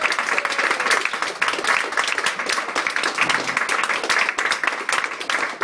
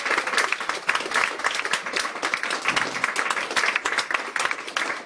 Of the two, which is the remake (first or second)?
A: second